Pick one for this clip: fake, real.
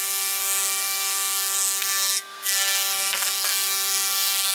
fake